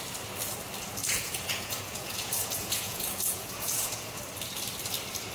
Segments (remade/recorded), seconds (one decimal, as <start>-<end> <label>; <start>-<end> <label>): 0.0-1.0 recorded; 1.0-4.2 remade; 4.2-5.3 recorded